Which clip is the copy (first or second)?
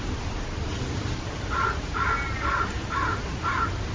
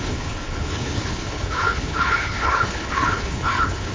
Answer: second